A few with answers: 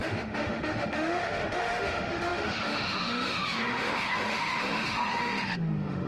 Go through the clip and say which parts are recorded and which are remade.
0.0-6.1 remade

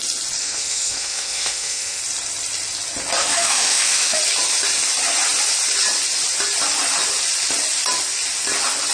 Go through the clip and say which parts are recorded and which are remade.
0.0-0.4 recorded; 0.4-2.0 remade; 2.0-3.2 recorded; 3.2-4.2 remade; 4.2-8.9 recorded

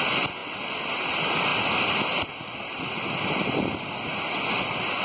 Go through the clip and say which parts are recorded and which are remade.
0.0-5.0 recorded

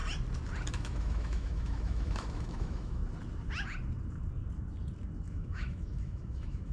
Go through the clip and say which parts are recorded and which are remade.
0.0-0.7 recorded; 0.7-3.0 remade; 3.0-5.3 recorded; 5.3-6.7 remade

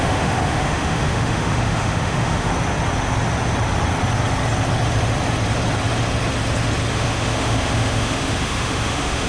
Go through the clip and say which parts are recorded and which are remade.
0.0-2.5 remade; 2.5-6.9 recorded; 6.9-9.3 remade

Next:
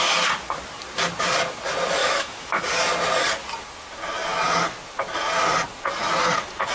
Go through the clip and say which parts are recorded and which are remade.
0.0-2.0 recorded; 2.0-2.6 remade; 2.6-6.7 recorded

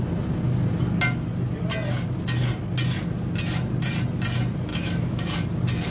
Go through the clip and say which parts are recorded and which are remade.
0.0-4.7 recorded; 4.7-5.2 remade; 5.2-5.9 recorded

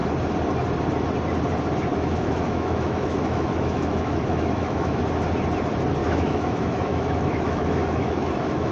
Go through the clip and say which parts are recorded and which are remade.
0.0-1.9 recorded; 1.9-5.0 remade; 5.0-6.0 recorded; 6.0-8.7 remade